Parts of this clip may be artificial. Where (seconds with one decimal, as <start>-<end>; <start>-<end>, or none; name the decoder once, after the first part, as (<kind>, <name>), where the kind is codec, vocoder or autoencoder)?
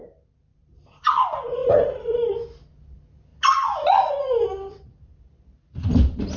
0.5-1.1 (vocoder, BigVGAN v2); 1.6-2.3